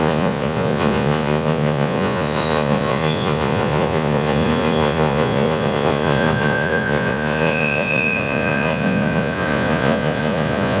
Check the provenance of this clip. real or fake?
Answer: fake